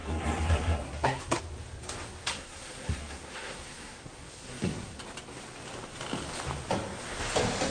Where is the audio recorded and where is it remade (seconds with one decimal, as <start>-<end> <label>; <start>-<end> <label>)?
0.0-1.4 remade; 1.4-2.3 recorded; 2.3-5.0 remade; 5.0-7.7 recorded